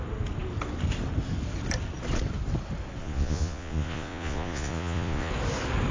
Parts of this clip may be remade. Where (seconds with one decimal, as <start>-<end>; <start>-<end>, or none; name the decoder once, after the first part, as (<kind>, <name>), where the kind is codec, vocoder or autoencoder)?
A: 3.0-5.3 (vocoder, Vocos)